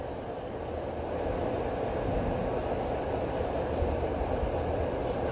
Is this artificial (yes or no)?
no